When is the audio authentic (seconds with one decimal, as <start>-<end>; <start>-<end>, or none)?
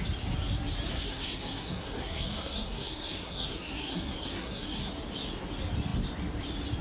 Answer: 0.0-0.9; 4.9-6.8